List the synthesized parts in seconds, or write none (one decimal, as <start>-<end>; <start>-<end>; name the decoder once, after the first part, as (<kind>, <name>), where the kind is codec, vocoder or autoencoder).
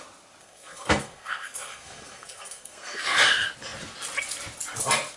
0.4-3.2 (codec, SNAC)